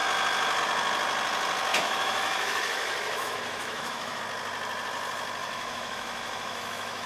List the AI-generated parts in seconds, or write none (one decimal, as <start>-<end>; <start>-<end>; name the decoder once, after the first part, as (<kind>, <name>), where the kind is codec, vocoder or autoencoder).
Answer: 1.7-4.2 (autoencoder, DAC-VAE); 5.4-7.1